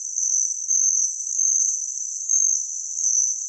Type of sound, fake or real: fake